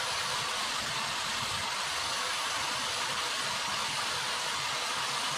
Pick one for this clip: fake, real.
real